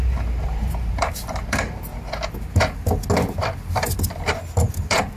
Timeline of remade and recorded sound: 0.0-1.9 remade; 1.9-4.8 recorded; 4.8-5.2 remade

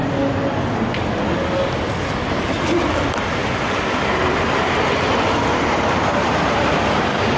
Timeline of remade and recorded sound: 0.0-2.5 recorded; 2.5-3.4 remade; 3.4-4.0 recorded; 4.0-7.4 remade